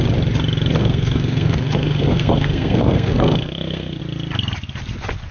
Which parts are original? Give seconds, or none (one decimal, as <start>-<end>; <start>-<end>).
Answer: 0.0-0.8; 4.0-5.3